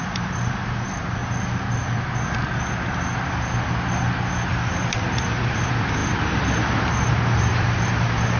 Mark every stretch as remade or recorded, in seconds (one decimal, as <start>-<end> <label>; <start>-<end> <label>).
0.0-1.2 remade; 1.2-4.5 recorded; 4.5-8.4 remade